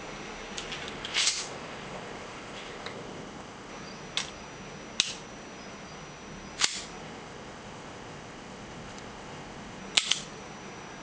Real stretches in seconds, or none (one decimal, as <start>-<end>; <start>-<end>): 0.0-0.9; 3.7-7.0; 9.8-11.0